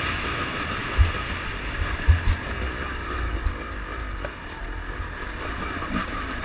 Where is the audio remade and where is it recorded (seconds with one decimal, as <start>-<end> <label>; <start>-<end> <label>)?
0.0-6.4 recorded